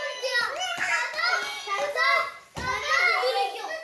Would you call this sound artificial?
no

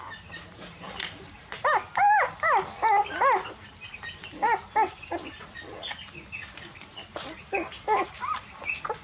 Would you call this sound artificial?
no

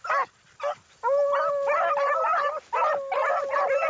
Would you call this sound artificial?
no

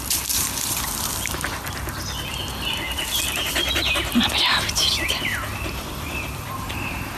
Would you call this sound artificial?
no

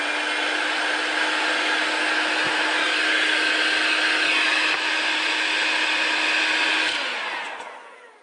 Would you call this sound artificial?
no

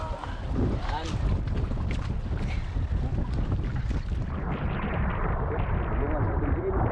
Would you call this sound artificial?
no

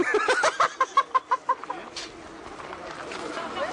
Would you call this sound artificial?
no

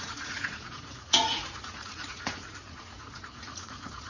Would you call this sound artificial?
yes